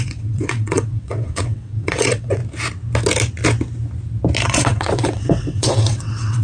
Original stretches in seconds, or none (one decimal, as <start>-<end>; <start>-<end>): 2.4-4.4